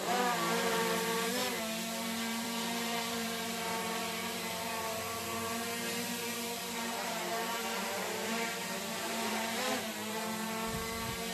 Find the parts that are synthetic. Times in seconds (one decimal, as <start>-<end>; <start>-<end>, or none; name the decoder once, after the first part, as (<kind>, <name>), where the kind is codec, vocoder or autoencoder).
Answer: 0.0-11.3 (vocoder, BigVGAN v2)